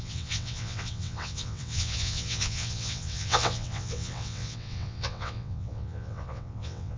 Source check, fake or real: fake